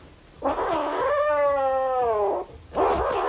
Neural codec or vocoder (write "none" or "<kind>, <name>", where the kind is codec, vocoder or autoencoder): none